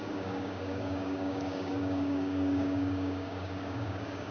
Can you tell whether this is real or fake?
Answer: fake